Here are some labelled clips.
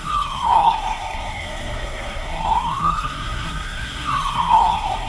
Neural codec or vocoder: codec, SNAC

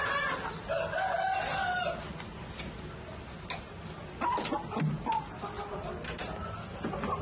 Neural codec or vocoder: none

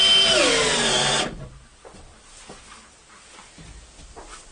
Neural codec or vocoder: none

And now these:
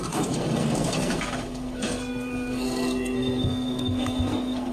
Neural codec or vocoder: codec, SNAC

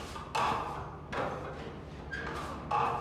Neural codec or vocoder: none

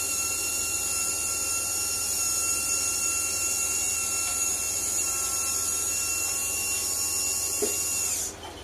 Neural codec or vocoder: none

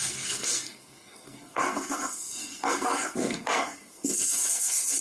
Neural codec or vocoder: codec, SNAC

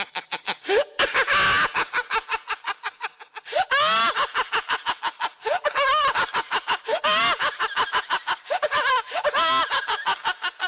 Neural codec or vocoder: none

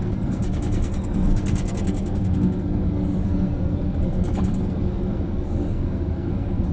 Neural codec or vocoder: codec, SNAC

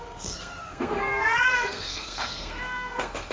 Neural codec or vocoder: codec, SNAC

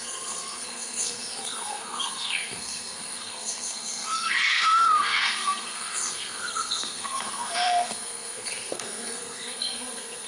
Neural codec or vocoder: codec, SNAC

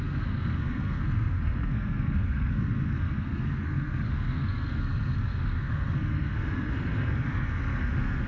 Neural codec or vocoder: codec, SNAC